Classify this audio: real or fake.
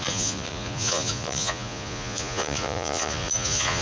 fake